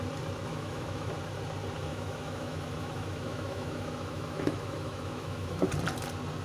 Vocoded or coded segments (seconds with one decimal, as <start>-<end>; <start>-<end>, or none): 0.5-1.1; 1.9-5.7